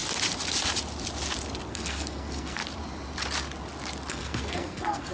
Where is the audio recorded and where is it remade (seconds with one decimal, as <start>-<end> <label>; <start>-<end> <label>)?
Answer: 0.0-1.7 recorded; 1.7-2.6 remade; 2.6-4.1 recorded; 4.1-5.1 remade